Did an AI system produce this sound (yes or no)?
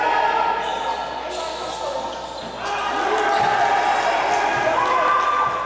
no